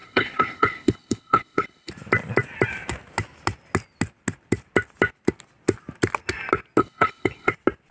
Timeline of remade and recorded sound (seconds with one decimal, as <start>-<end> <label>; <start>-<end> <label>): 0.0-1.9 remade; 1.9-6.8 recorded; 6.8-7.5 remade; 7.5-7.9 recorded